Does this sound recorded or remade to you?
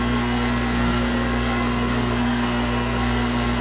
remade